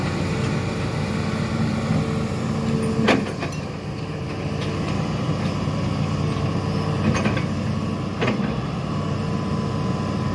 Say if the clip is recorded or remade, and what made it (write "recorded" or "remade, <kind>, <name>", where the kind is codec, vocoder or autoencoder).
recorded